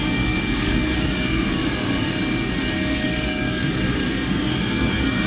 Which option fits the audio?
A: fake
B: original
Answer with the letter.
A